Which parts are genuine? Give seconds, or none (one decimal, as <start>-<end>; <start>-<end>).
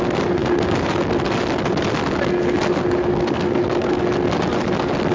0.0-3.1; 4.0-5.1